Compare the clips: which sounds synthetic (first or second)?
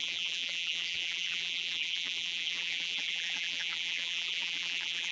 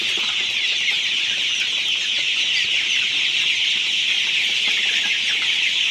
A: first